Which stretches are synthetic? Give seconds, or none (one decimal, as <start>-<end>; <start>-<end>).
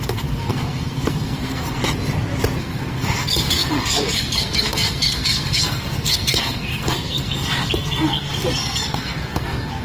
0.0-1.8; 2.6-9.8